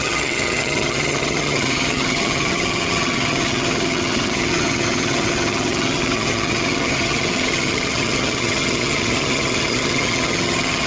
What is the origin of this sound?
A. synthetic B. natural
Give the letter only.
A